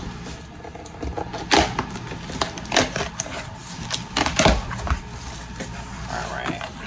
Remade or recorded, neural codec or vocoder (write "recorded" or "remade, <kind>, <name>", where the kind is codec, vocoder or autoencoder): recorded